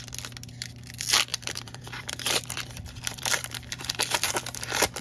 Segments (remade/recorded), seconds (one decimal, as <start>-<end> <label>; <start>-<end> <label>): 0.0-1.3 recorded; 1.3-4.2 remade; 4.2-5.0 recorded